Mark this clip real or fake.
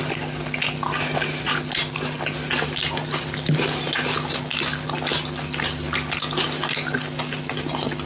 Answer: real